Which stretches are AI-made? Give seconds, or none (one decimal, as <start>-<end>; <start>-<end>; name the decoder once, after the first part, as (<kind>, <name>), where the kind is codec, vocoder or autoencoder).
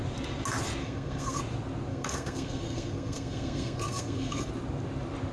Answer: 0.8-1.4 (codec, SNAC); 1.9-4.5